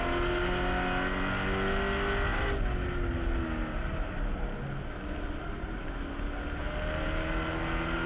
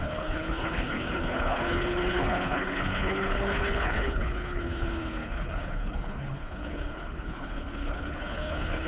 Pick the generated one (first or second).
second